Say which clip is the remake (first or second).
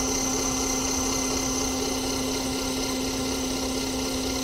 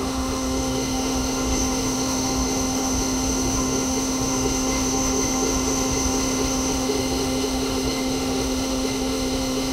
second